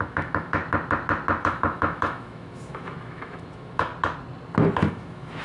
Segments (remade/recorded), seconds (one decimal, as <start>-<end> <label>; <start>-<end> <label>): 0.0-0.6 remade; 0.6-1.4 recorded; 1.4-3.9 remade; 3.9-4.9 recorded; 4.9-5.4 remade